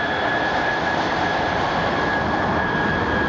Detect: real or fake real